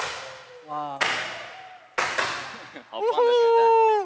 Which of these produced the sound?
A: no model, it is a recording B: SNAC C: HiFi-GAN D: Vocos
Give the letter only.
A